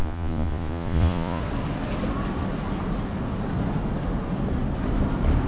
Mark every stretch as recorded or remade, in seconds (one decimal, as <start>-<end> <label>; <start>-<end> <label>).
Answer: 0.0-1.4 remade; 1.4-5.5 recorded